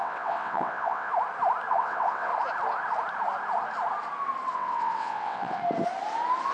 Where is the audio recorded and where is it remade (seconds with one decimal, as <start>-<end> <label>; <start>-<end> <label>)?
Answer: 0.0-1.1 remade; 1.1-1.7 recorded; 1.7-2.3 remade; 2.3-4.5 recorded; 4.5-5.6 remade; 5.6-6.5 recorded